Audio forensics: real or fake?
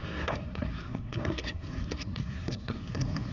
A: fake